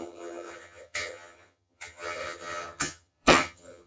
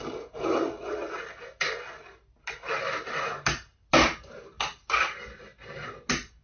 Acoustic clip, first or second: second